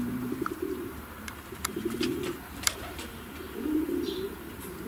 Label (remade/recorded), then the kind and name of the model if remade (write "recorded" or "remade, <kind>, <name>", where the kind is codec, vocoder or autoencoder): remade, vocoder, BigVGAN v2